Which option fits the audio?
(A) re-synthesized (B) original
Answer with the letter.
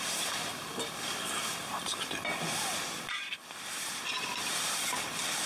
A